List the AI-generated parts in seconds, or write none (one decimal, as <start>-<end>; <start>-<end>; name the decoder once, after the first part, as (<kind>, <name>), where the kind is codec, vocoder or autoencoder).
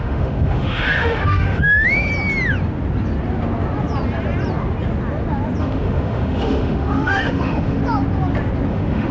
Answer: 0.0-2.1 (autoencoder, DAC-VAE); 5.6-7.8; 8.7-9.1